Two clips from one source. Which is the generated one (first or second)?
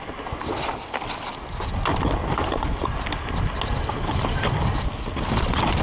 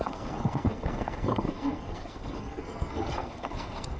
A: second